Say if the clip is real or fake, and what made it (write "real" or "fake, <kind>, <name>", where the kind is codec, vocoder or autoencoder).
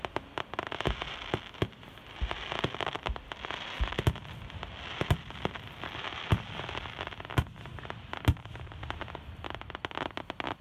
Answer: real